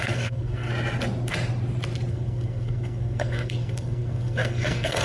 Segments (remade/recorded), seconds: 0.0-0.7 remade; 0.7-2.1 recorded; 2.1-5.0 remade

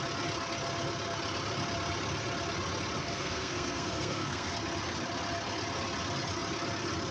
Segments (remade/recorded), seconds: 0.0-3.0 recorded; 3.0-4.5 remade; 4.5-7.1 recorded